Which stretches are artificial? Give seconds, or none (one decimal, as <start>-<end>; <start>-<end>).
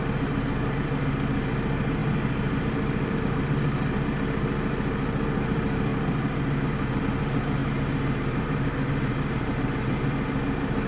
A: 0.0-10.9